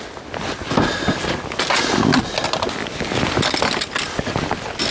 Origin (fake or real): real